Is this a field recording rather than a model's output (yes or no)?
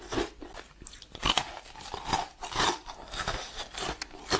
yes